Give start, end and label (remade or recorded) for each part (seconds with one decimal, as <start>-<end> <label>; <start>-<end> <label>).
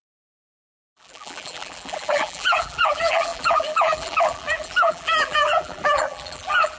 0.0-6.8 remade